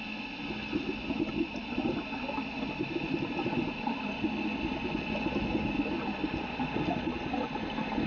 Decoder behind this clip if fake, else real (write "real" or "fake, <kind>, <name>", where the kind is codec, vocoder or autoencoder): real